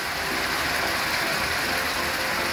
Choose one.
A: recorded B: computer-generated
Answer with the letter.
A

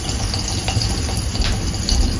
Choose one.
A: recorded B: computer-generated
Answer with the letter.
A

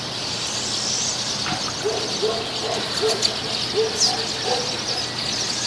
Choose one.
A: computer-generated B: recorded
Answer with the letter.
B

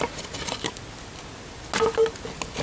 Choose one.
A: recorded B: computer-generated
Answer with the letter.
A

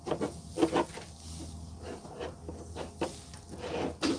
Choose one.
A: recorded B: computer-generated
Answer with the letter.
A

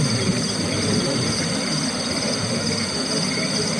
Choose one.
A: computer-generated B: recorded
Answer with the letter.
B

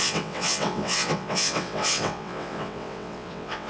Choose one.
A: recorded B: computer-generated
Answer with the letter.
B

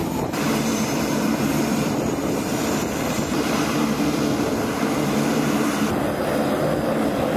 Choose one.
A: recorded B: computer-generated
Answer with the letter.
B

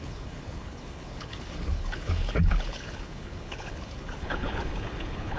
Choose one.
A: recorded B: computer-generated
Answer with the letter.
B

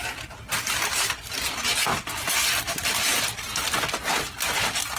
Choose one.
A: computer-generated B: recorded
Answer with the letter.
B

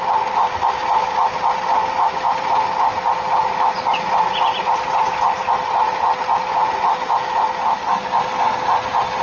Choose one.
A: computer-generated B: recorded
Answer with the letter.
B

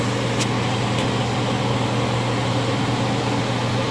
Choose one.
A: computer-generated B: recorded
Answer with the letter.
B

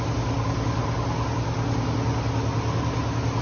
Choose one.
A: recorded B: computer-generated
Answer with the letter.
A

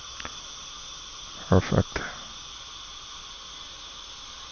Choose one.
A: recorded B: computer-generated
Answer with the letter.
A